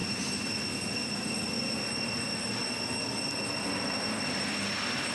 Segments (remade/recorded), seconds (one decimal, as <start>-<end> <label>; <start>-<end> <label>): 0.0-5.1 recorded